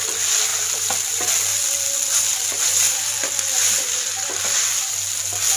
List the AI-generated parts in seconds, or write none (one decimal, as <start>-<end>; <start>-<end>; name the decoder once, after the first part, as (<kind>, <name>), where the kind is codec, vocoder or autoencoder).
0.5-1.3 (vocoder, BigVGAN v2); 2.3-4.4